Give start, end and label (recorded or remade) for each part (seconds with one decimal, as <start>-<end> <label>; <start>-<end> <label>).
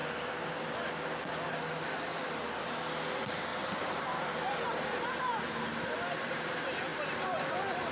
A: 0.0-3.5 recorded; 3.5-5.7 remade; 5.7-7.9 recorded